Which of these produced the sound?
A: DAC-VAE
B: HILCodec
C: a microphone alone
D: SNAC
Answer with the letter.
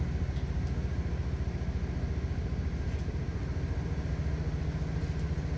C